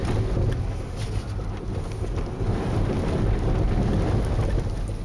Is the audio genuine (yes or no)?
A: yes